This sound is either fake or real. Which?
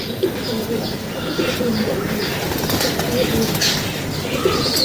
fake